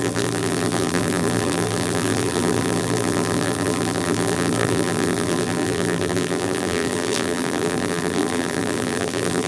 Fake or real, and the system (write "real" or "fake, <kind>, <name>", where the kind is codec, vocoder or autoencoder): fake, vocoder, BigVGAN v2